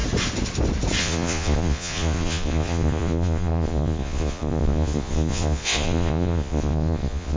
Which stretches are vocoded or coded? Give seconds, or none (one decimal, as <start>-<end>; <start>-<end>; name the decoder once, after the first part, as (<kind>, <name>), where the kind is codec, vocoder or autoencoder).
1.0-7.4 (vocoder, Vocos)